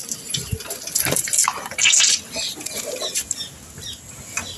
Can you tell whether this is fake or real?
real